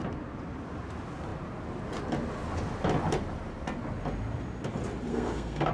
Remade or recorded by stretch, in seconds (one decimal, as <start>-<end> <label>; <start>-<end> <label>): 0.0-5.1 recorded; 5.1-5.7 remade